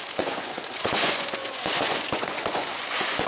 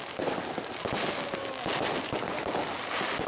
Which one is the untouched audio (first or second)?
second